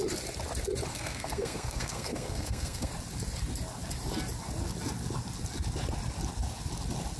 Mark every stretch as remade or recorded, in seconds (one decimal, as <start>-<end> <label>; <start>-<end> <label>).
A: 0.0-0.9 recorded; 0.9-2.9 remade; 2.9-7.2 recorded